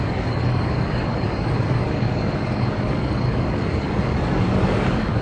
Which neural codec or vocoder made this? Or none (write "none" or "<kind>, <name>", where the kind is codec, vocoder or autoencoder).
codec, DAC